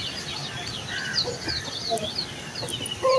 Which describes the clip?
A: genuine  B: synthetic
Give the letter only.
A